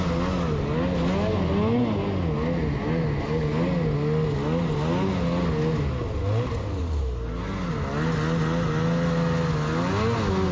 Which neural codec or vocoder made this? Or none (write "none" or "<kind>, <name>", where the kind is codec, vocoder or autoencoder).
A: none